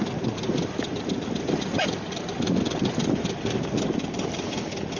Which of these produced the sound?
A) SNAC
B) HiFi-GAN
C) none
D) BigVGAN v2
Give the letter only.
C